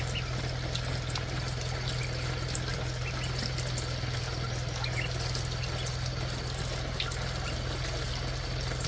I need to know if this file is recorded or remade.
recorded